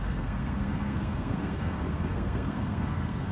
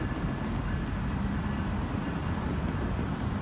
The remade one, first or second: first